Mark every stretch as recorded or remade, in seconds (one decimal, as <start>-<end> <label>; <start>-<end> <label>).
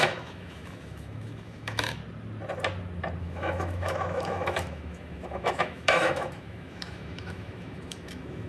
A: 0.0-2.0 remade; 2.0-3.2 recorded; 3.2-8.5 remade